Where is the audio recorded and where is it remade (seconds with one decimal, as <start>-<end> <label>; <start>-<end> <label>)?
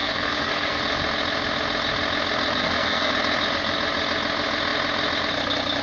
0.0-0.8 remade; 0.8-2.6 recorded; 2.6-3.1 remade; 3.1-5.8 recorded